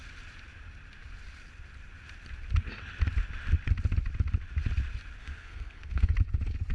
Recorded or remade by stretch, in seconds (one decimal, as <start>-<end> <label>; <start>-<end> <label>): 0.0-5.2 recorded; 5.2-6.1 remade; 6.1-6.7 recorded